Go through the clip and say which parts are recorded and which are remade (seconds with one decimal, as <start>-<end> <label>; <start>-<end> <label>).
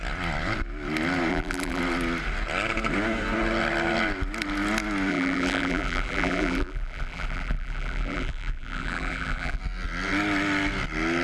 0.0-1.3 recorded; 1.3-1.8 remade; 1.8-5.1 recorded; 5.1-9.6 remade; 9.6-11.2 recorded